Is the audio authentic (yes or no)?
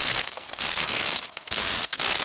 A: no